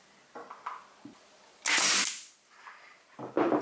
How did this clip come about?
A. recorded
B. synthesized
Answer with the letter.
A